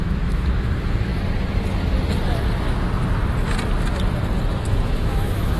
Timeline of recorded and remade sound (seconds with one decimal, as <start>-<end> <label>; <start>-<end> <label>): 0.0-1.1 remade; 1.1-4.5 recorded; 4.5-5.6 remade